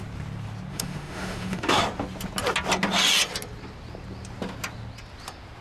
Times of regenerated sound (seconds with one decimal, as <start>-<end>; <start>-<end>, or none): 0.7-1.8